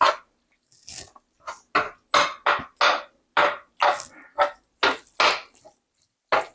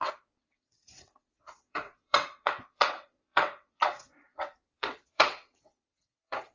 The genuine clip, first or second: first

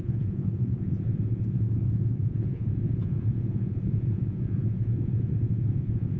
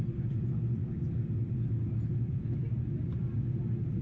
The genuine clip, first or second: second